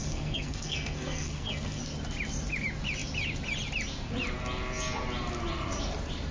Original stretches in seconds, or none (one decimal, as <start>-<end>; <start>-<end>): 1.8-6.3